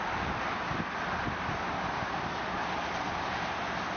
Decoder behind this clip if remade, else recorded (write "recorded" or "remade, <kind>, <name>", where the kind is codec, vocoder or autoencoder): recorded